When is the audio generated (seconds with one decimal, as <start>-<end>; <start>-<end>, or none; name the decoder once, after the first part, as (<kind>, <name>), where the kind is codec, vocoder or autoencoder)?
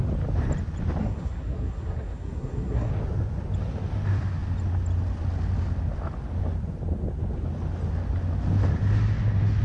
1.0-2.9 (codec, SNAC)